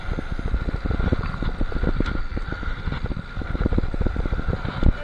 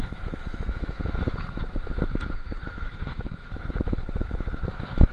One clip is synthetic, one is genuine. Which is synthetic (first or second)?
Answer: second